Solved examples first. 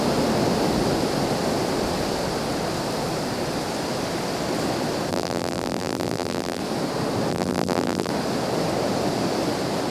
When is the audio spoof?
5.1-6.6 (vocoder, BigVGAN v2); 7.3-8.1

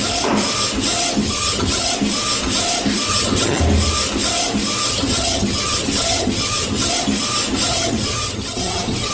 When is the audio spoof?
1.2-1.9 (vocoder, HiFi-GAN); 3.1-3.6; 4.9-6.9; 7.7-9.1

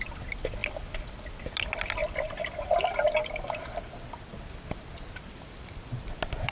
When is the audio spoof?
none

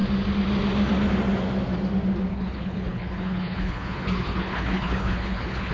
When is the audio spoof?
2.3-5.7 (codec, HILCodec)

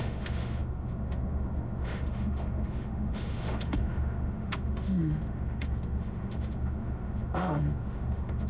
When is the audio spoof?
0.0-8.5 (autoencoder, DAC-VAE)

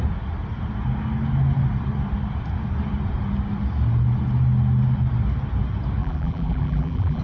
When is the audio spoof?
6.0-7.2 (vocoder, BigVGAN v2)